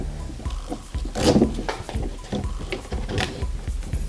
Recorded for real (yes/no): yes